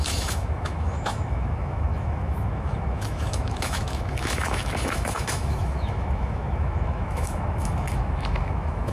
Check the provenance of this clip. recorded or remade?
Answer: remade